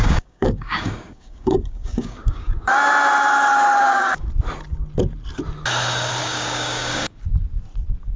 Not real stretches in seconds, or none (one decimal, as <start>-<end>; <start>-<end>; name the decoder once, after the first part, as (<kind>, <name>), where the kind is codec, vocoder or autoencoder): 0.0-2.7 (codec, DAC); 3.8-4.3; 6.2-7.2